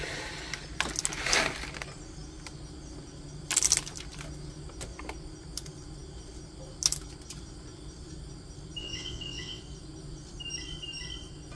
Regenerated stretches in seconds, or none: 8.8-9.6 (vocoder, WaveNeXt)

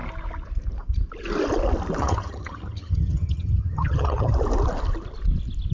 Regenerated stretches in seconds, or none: 2.0-4.3 (vocoder, HiFi-GAN)

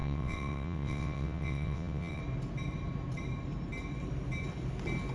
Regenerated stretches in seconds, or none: 0.0-2.2 (vocoder, WaveNeXt)

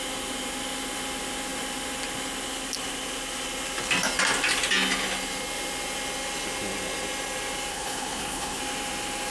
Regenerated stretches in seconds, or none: 7.7-8.6 (codec, HILCodec)

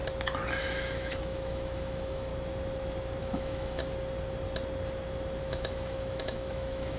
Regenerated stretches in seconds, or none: 0.6-2.3 (autoencoder, DAC-VAE); 3.2-3.8; 5.4-7.0

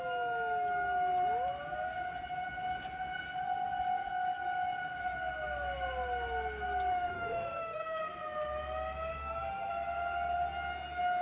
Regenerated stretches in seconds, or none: 6.9-8.0 (autoencoder, DAC-VAE); 9.1-9.7

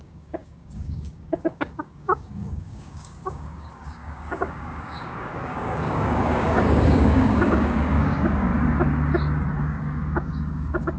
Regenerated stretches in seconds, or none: 0.0-8.5 (codec, DAC); 9.6-11.0